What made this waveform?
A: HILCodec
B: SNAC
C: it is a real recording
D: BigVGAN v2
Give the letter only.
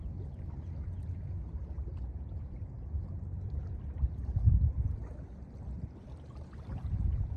D